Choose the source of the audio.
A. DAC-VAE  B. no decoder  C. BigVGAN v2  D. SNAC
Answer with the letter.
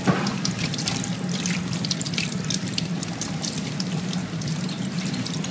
C